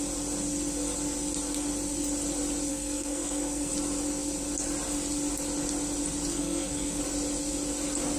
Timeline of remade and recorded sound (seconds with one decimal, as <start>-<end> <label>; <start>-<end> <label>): 0.0-2.7 recorded; 2.7-3.7 remade; 3.7-6.3 recorded; 6.3-7.0 remade; 7.0-8.2 recorded